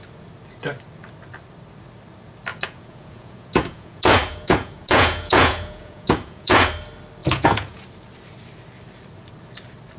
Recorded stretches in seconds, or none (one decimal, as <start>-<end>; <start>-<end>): 0.0-2.5; 6.7-7.2; 7.8-10.0